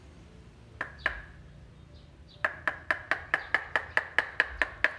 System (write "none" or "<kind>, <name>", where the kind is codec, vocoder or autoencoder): none